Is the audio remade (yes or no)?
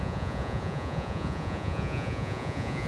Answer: yes